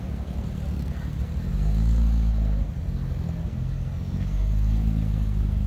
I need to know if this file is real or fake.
fake